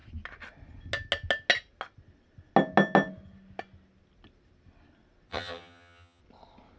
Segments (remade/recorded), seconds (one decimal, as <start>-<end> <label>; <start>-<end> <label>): 0.0-5.3 recorded; 5.3-6.2 remade; 6.2-6.8 recorded